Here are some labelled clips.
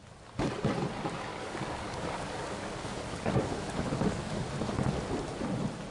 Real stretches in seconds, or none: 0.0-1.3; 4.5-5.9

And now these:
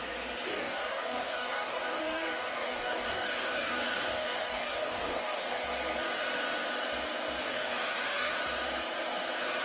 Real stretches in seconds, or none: 0.0-0.5; 5.6-7.4; 8.3-9.6

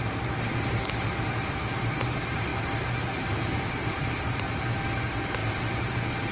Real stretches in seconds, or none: none

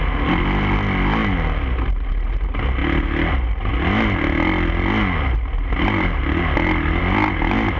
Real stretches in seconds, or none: 0.0-7.8

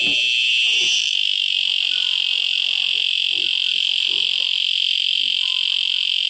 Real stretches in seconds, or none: 0.0-3.7; 5.2-6.3

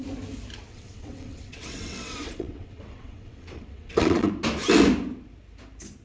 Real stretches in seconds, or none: 0.0-0.7; 4.3-6.0

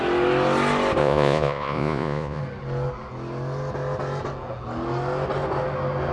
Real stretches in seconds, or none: 0.0-1.0; 2.4-6.1